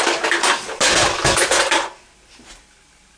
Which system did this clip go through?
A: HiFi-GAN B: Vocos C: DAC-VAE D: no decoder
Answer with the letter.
D